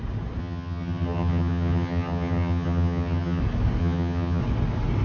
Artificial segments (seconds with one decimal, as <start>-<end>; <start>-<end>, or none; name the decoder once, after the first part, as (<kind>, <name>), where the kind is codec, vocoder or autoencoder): 0.4-3.4 (vocoder, HiFi-GAN); 3.8-4.4